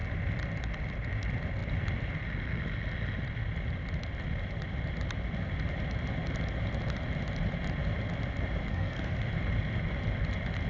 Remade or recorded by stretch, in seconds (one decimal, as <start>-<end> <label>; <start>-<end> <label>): 0.0-8.7 recorded; 8.7-9.3 remade; 9.3-10.7 recorded